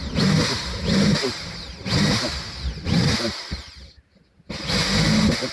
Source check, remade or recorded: recorded